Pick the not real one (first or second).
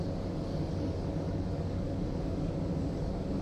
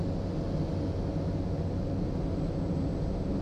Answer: first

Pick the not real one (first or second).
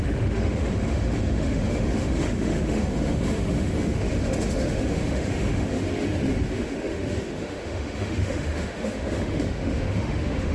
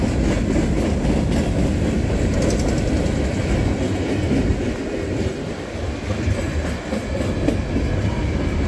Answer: first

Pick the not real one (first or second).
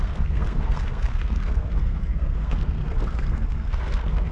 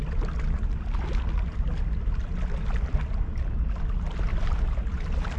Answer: first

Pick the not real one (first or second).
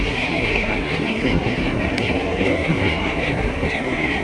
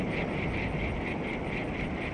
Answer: first